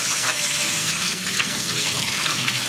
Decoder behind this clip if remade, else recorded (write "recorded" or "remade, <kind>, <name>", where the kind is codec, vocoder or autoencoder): remade, codec, SNAC